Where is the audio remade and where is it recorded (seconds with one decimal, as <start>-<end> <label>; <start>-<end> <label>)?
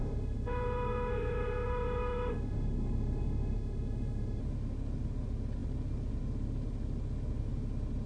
0.0-4.4 remade; 4.4-8.1 recorded